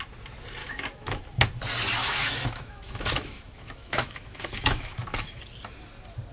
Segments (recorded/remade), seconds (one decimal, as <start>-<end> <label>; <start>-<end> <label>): 0.0-0.6 recorded; 0.6-1.2 remade; 1.2-2.0 recorded; 2.0-5.4 remade; 5.4-6.3 recorded